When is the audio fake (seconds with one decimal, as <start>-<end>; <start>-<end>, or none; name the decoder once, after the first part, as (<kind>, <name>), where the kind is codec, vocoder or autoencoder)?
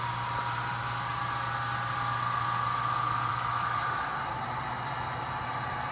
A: 3.3-4.1 (autoencoder, DAC-VAE)